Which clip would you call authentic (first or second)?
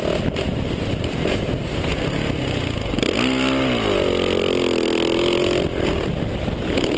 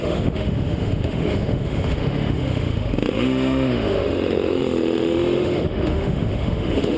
first